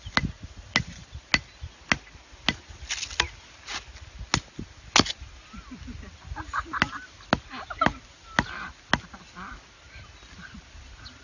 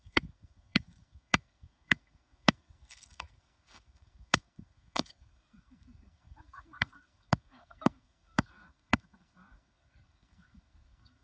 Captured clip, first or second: first